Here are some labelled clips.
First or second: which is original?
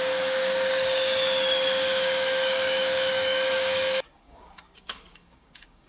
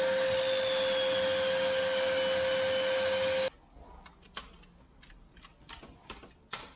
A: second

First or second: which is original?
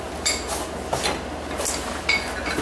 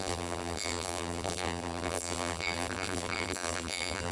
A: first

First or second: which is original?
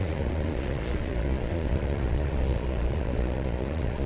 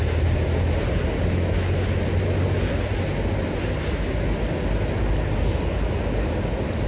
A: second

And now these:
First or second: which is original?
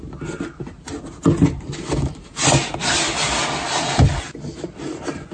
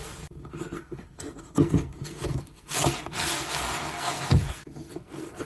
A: first